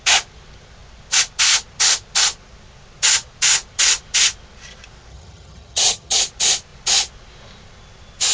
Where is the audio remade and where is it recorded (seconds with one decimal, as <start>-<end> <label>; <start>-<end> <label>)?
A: 0.0-5.1 recorded; 5.1-6.2 remade; 6.2-8.3 recorded